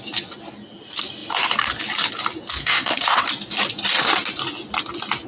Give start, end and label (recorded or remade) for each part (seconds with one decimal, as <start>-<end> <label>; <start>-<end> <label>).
0.0-2.6 recorded; 2.6-3.2 remade; 3.2-5.3 recorded